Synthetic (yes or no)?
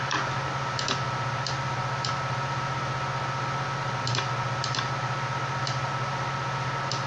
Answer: no